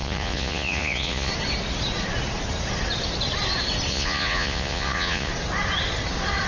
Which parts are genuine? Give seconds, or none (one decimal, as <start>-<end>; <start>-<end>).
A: 1.3-3.9; 5.3-6.5